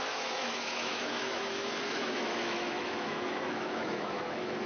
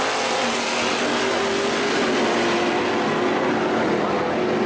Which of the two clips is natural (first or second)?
second